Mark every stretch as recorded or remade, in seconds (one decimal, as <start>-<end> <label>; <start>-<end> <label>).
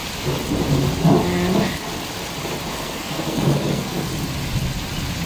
0.0-2.7 recorded; 2.7-4.1 remade; 4.1-5.3 recorded